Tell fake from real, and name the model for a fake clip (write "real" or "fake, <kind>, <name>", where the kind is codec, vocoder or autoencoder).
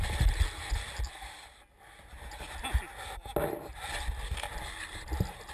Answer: real